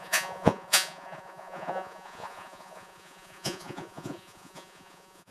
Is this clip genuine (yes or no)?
no